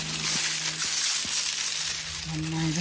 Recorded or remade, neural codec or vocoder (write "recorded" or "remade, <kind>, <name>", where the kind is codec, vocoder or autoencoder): recorded